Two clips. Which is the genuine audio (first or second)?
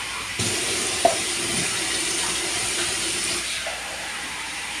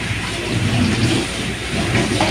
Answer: second